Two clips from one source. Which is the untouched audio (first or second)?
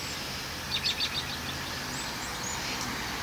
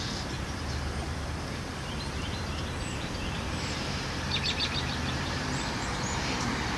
first